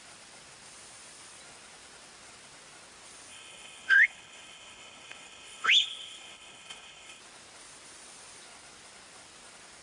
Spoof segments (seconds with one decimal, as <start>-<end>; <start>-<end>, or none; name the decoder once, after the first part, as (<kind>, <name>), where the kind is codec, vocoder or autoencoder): 3.3-7.2 (codec, HILCodec)